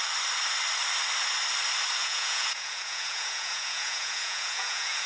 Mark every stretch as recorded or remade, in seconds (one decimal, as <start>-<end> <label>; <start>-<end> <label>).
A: 0.0-2.0 recorded; 2.0-5.1 remade